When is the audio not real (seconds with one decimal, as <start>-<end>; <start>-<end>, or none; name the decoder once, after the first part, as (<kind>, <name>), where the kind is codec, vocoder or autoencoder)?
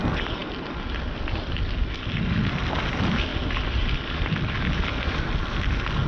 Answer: none